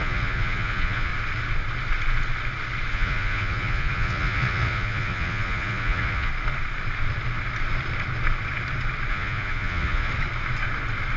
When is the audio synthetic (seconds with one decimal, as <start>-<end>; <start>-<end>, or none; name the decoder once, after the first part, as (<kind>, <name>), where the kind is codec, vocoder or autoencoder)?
0.0-1.1 (vocoder, Vocos); 2.9-6.3; 9.1-10.1